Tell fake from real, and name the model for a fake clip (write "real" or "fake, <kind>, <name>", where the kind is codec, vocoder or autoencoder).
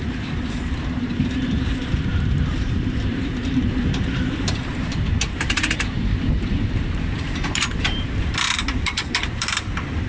fake, vocoder, BigVGAN v2